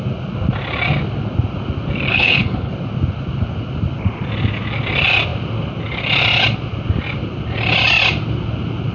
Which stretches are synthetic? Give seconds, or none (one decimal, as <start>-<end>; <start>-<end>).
2.1-2.7